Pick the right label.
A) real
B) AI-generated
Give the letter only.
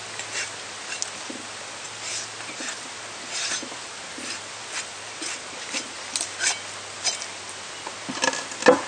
A